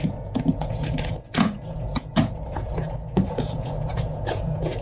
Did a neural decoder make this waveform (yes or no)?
yes